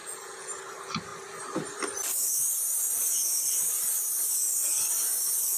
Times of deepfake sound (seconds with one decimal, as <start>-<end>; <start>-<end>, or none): 0.0-0.6